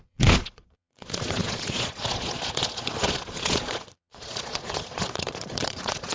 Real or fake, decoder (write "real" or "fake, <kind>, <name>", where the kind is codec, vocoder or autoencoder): fake, vocoder, Vocos